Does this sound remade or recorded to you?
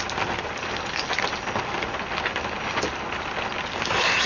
recorded